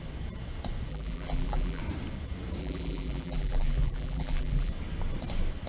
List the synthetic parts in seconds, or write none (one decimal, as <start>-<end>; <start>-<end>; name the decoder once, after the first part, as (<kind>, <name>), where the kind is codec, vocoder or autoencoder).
0.9-1.8 (vocoder, BigVGAN v2); 2.6-4.7